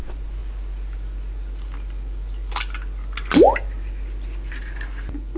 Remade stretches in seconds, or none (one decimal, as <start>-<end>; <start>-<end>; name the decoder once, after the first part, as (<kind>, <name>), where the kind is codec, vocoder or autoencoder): none